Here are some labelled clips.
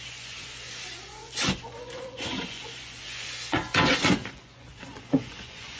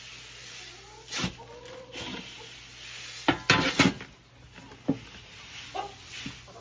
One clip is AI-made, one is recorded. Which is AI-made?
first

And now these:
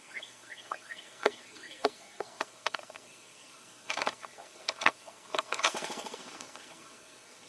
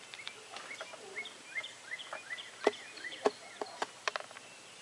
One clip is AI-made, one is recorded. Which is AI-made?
first